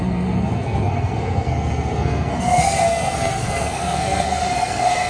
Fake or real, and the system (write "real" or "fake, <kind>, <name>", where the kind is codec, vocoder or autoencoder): fake, codec, SNAC